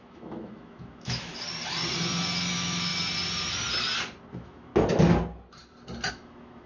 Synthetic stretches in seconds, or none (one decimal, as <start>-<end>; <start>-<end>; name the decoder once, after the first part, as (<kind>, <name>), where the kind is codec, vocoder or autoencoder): 0.0-1.3 (autoencoder, DAC-VAE); 2.5-2.9; 4.3-4.7; 6.1-6.7